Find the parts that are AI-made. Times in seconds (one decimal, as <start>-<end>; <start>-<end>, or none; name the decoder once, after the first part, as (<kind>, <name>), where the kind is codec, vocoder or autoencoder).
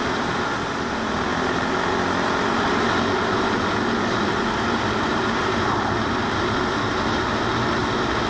none